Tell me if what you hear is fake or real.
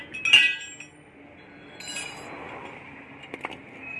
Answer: real